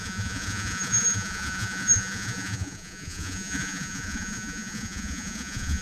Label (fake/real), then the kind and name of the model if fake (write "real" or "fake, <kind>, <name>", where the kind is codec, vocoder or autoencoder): fake, vocoder, Vocos